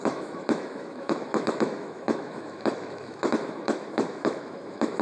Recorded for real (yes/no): no